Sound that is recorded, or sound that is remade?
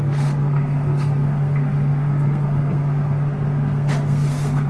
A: remade